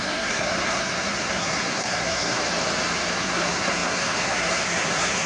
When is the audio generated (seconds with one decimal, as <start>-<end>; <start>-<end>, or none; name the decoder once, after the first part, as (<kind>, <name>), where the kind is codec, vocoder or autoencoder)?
0.0-2.4 (codec, SNAC); 3.1-5.3